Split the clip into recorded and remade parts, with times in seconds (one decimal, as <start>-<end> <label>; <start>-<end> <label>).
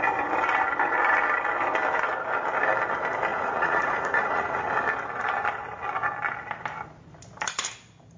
0.0-3.3 recorded; 3.3-4.7 remade; 4.7-8.2 recorded